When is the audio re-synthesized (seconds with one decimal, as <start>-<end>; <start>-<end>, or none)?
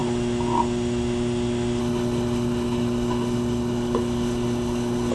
1.8-5.1